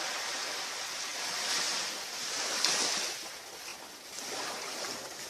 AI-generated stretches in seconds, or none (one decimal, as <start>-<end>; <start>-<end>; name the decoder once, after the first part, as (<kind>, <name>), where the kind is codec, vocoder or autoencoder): none